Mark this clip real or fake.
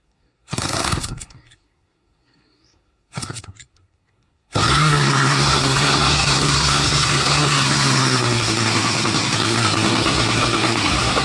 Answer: fake